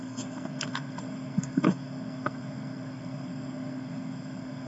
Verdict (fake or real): fake